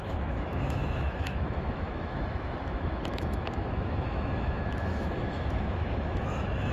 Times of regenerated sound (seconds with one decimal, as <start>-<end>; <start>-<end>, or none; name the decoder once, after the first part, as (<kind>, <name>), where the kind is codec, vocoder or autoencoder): 0.0-6.7 (autoencoder, DAC-VAE)